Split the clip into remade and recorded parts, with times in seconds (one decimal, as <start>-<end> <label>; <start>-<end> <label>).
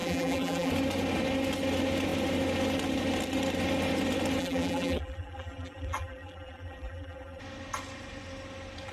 0.0-0.7 remade; 0.7-4.4 recorded; 4.4-7.4 remade; 7.4-8.9 recorded